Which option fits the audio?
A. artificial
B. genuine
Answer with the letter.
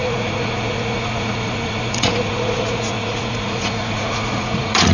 A